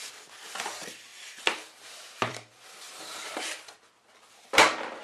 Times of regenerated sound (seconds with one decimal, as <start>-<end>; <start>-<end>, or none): 1.1-3.8